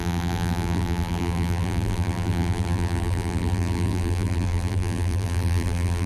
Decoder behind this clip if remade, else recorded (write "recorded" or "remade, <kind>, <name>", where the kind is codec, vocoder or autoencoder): remade, vocoder, BigVGAN v2